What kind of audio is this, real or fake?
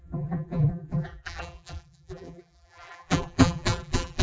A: fake